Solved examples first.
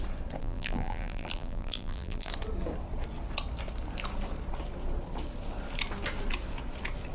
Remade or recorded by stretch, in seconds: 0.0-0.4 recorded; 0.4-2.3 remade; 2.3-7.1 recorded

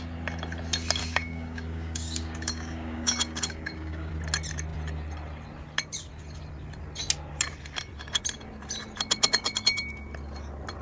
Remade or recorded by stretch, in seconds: 0.0-1.0 recorded; 1.0-4.1 remade; 4.1-10.8 recorded